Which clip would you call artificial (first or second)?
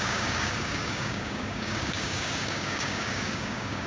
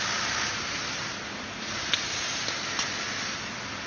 first